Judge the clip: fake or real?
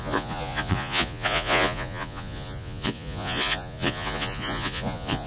fake